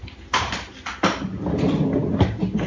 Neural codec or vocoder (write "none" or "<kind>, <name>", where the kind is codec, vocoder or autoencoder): none